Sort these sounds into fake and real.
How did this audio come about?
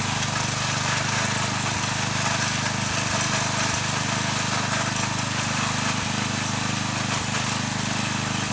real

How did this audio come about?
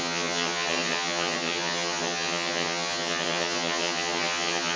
fake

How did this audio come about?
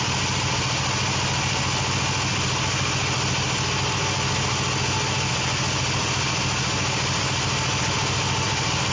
real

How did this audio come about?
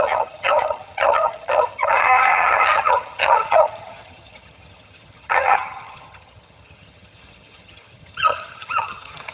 fake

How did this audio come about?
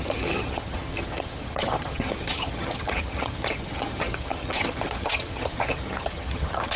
fake